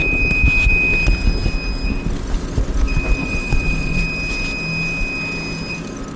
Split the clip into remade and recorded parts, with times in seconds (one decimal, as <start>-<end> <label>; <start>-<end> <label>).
0.0-3.2 recorded; 3.2-4.0 remade; 4.0-6.2 recorded